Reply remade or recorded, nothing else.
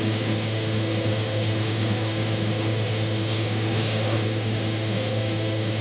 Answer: remade